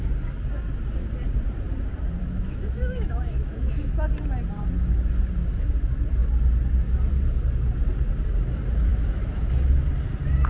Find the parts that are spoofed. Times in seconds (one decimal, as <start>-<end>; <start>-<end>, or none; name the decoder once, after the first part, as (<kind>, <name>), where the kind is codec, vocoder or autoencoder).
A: 2.2-3.9 (autoencoder, DAC-VAE); 8.9-9.5